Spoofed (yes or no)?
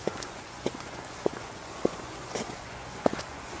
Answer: yes